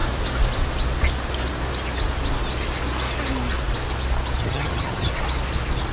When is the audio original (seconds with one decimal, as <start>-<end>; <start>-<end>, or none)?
0.0-4.4; 5.1-5.9